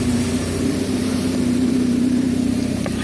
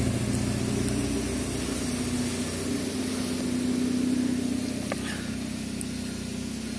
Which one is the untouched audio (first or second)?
second